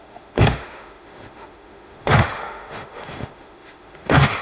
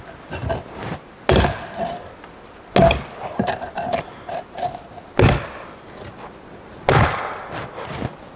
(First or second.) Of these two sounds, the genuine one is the second